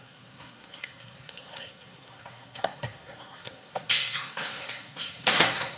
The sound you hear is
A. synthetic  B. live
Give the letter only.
A